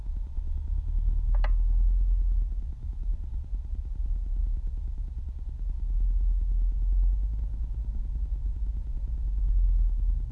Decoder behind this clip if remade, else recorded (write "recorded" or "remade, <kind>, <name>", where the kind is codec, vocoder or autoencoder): recorded